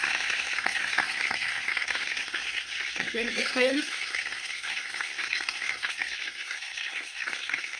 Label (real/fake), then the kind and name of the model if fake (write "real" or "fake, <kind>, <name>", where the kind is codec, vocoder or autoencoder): fake, codec, SNAC